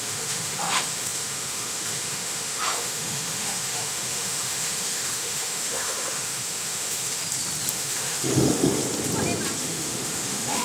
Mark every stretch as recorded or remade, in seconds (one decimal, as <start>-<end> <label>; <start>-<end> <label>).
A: 0.0-7.2 remade; 7.2-7.7 recorded; 7.7-8.8 remade; 8.8-9.6 recorded; 9.6-10.6 remade

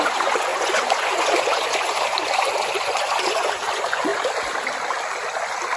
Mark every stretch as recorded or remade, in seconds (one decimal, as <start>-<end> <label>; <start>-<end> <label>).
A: 0.0-4.1 remade; 4.1-5.8 recorded

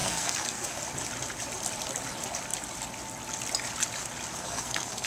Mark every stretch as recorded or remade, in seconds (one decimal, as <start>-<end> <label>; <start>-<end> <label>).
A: 0.0-0.8 remade; 0.8-4.4 recorded; 4.4-5.1 remade

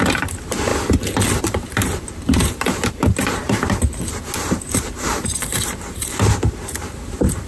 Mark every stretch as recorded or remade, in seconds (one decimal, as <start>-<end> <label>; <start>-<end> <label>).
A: 0.0-0.7 remade; 0.7-1.4 recorded; 1.4-7.5 remade

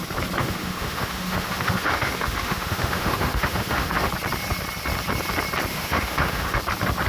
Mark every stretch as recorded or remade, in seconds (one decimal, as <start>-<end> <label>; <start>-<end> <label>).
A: 0.0-0.4 recorded; 0.4-4.1 remade; 4.1-5.7 recorded; 5.7-6.6 remade; 6.6-7.1 recorded

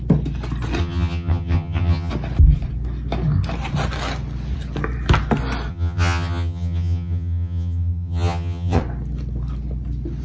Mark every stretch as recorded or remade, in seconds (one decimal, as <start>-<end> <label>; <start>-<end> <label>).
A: 0.0-0.8 recorded; 0.8-2.1 remade; 2.1-5.7 recorded; 5.7-8.8 remade; 8.8-10.2 recorded

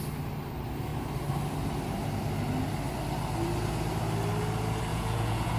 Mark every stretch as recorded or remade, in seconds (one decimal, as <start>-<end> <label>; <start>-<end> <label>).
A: 0.0-4.9 recorded; 4.9-5.6 remade

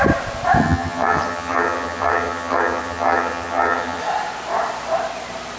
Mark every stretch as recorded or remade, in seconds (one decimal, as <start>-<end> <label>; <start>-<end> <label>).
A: 0.0-0.6 recorded; 0.6-4.0 remade; 4.0-5.6 recorded